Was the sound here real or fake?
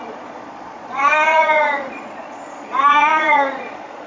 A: fake